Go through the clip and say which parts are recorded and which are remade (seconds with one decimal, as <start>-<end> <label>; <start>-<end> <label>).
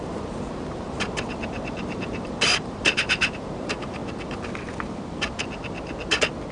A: 0.0-4.0 remade; 4.0-6.5 recorded